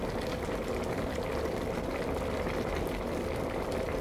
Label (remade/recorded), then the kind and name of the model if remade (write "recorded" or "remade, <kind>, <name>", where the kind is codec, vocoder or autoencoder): recorded